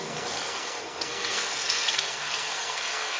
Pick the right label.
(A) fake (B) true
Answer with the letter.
A